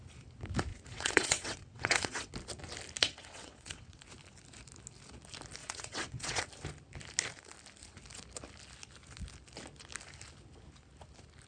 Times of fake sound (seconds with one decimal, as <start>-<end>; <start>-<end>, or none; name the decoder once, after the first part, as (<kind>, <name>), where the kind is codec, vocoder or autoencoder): 0.7-2.3 (vocoder, WaveNeXt); 3.0-4.0; 5.6-6.4